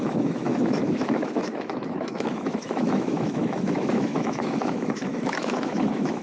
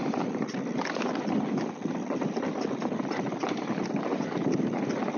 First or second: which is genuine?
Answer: second